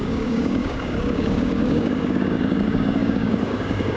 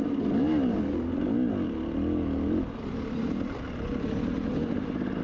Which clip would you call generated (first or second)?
first